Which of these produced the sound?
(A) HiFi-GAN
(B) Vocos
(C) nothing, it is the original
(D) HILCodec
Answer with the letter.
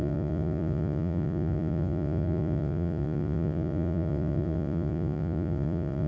B